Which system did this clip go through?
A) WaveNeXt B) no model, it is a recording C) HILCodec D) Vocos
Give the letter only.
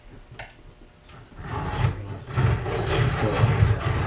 B